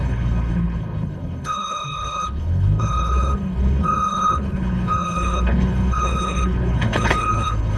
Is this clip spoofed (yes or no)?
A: yes